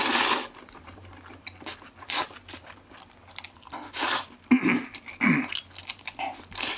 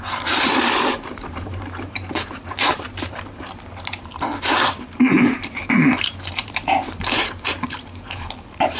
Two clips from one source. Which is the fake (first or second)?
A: second